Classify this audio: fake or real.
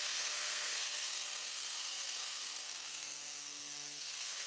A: fake